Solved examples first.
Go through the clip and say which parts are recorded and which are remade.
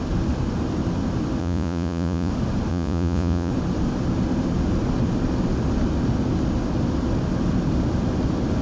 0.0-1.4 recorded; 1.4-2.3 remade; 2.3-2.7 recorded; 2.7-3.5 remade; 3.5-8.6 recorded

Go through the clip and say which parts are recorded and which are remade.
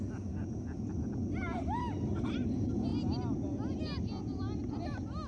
0.0-5.3 recorded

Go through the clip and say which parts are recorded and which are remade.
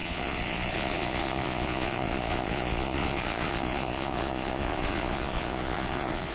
0.0-6.3 remade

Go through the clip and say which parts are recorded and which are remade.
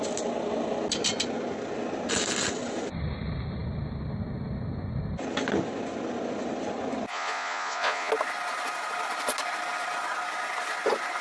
0.0-7.1 recorded; 7.1-8.1 remade; 8.1-11.2 recorded